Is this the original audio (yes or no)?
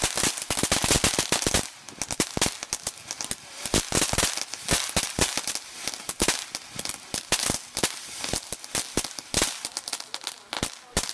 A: yes